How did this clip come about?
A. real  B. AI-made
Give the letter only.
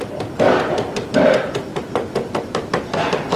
A